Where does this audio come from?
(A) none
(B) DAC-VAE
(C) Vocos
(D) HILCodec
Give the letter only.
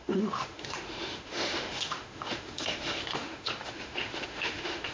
B